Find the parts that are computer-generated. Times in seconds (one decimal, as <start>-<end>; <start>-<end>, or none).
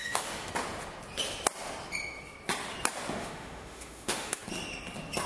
0.0-0.5; 3.2-4.4